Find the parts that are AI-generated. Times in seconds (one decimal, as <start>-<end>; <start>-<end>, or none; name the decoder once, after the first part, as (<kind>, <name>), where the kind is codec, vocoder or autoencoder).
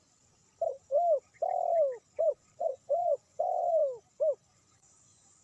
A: 0.0-0.4 (vocoder, Vocos); 2.2-3.8; 4.5-5.4